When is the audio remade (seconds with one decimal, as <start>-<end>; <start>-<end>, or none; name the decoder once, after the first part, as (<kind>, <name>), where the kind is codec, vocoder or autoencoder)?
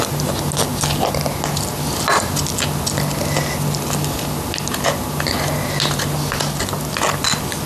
none